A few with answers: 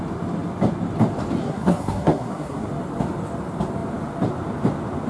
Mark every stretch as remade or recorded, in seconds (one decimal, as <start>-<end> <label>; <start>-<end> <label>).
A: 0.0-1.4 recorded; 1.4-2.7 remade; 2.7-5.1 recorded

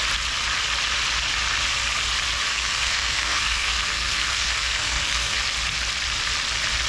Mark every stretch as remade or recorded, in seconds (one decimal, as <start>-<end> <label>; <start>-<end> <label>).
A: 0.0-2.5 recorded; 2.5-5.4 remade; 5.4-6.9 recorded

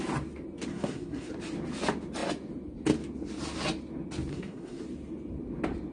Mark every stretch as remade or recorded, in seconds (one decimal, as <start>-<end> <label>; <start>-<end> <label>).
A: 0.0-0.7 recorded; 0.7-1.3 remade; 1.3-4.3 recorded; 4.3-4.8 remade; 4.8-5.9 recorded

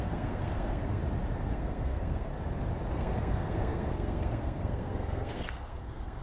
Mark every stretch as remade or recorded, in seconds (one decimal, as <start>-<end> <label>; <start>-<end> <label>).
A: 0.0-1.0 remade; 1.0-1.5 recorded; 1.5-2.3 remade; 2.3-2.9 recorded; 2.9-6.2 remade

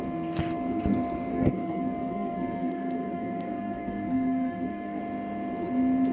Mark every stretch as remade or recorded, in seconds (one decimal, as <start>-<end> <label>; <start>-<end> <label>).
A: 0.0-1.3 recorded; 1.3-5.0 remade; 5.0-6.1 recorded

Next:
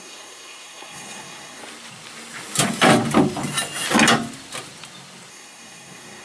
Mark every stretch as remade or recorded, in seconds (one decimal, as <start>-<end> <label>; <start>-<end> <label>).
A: 0.0-1.6 remade; 1.6-5.3 recorded; 5.3-6.2 remade

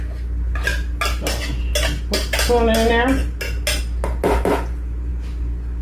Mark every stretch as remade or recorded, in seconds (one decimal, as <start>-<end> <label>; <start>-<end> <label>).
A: 0.0-5.8 recorded

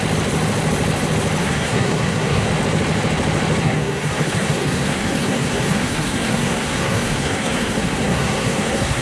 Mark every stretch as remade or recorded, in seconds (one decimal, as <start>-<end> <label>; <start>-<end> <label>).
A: 0.0-1.4 recorded; 1.4-2.5 remade; 2.5-3.6 recorded; 3.6-9.0 remade